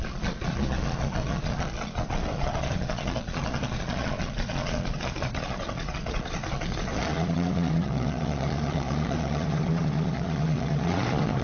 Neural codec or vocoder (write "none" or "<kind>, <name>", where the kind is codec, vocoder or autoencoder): vocoder, Vocos